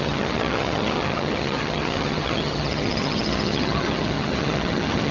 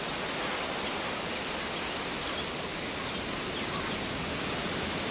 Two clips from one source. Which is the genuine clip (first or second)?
second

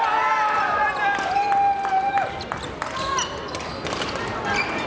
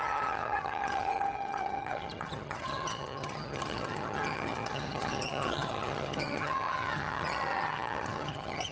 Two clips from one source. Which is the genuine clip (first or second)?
first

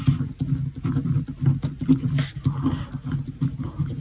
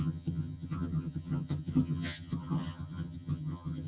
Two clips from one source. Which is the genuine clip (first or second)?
first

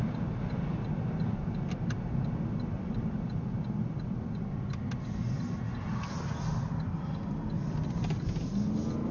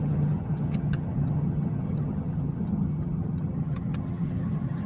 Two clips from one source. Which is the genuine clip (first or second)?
first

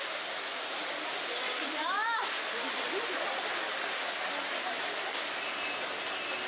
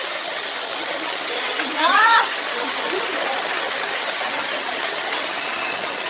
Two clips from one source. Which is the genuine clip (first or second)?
first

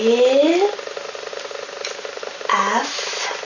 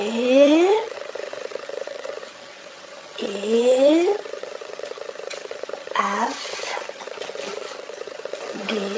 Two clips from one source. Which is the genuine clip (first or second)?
first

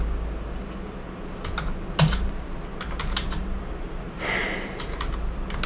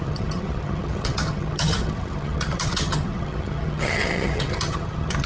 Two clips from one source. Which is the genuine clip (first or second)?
first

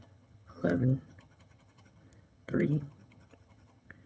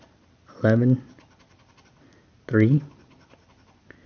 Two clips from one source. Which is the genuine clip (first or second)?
second